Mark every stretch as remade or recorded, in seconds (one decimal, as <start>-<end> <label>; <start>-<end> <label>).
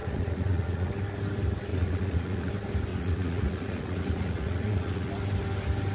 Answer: 0.0-0.9 remade; 0.9-1.7 recorded; 1.7-2.5 remade; 2.5-2.9 recorded; 2.9-5.1 remade; 5.1-5.9 recorded